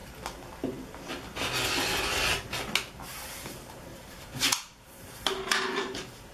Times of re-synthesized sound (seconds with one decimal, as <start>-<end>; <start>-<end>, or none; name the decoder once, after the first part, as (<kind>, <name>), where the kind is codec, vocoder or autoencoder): 3.5-6.3 (vocoder, BigVGAN v2)